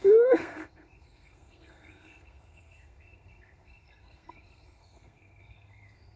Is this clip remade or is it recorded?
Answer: remade